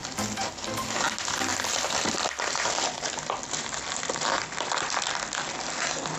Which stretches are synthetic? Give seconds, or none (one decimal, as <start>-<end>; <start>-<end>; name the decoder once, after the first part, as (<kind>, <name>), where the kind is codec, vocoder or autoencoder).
0.0-0.7 (vocoder, BigVGAN v2); 1.5-5.2